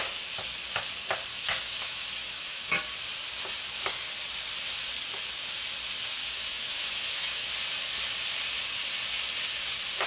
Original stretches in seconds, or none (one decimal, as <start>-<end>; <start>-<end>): 0.0-1.3; 2.8-6.2; 7.5-10.1